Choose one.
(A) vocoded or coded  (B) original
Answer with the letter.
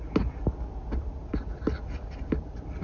B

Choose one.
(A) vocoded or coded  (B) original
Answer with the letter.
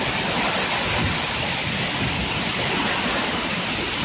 B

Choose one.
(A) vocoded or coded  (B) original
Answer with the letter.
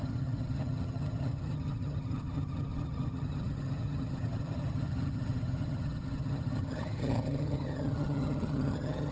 A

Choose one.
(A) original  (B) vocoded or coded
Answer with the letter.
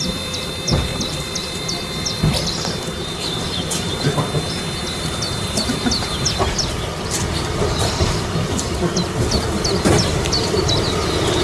B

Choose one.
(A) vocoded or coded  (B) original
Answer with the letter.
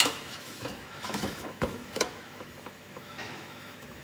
A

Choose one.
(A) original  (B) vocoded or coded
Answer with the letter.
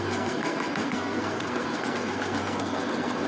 B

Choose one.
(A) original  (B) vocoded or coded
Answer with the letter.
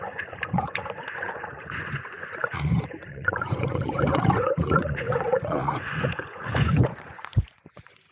B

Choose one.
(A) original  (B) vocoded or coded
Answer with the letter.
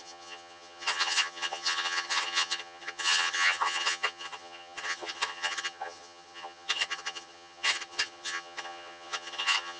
B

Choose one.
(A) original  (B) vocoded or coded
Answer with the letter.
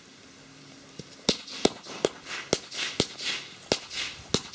A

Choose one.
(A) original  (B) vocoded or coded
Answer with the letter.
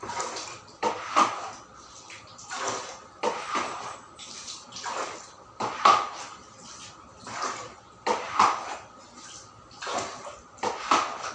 A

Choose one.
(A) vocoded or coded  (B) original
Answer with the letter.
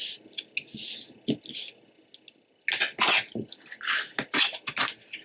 B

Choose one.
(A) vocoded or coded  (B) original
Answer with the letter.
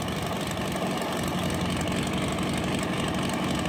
B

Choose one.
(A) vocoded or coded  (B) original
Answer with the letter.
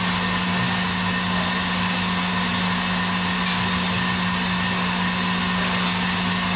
B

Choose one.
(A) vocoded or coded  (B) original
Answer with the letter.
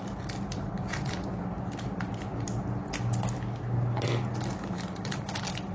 B